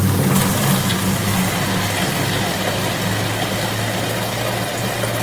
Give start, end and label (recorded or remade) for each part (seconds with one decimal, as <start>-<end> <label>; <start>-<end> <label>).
0.0-5.2 recorded